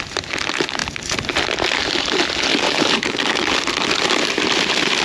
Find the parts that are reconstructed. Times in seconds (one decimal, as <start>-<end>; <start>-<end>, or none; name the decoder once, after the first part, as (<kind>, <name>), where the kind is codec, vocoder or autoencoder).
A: 2.5-3.5 (codec, DAC)